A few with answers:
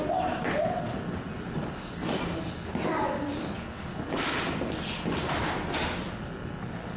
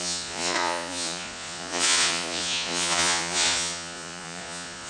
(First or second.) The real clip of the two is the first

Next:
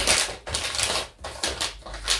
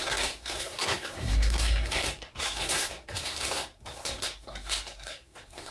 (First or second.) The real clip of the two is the first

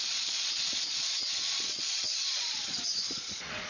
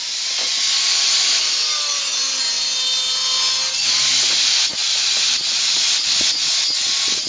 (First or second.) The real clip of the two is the second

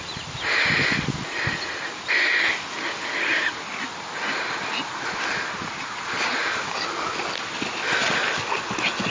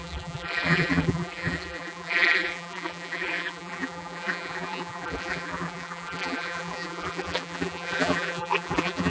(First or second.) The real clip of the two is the first